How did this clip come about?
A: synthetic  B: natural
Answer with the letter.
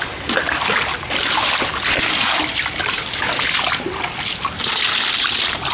B